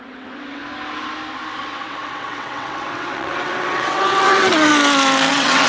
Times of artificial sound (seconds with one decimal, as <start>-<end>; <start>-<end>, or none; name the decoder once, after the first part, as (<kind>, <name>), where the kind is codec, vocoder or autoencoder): 0.0-0.6 (vocoder, WaveNeXt); 1.6-4.7; 5.3-5.7